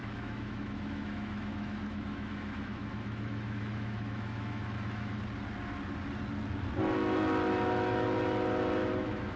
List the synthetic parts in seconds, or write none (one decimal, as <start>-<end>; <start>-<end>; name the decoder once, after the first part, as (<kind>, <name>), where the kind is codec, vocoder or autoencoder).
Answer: 0.0-5.2 (autoencoder, DAC-VAE); 8.8-9.4